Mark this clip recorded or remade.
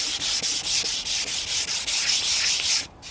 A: recorded